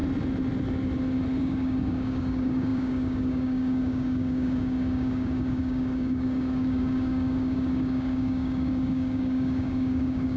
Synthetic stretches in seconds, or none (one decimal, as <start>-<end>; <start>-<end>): 1.4-10.4